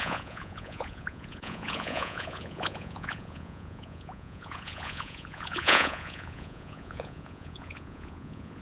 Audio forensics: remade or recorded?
remade